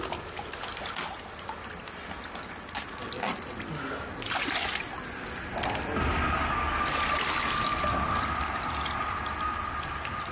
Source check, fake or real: real